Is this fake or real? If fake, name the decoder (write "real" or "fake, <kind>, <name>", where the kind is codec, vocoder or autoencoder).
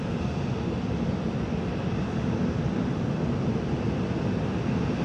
real